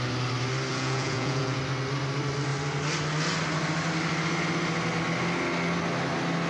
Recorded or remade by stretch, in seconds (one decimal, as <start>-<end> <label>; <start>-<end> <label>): 0.0-0.7 recorded; 0.7-1.6 remade; 1.6-6.5 recorded